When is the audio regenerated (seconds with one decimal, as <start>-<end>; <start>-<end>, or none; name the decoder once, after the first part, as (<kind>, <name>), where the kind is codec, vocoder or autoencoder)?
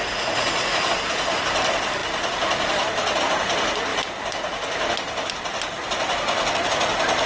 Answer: 0.0-0.9 (vocoder, Vocos)